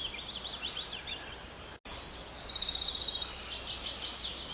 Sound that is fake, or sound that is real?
real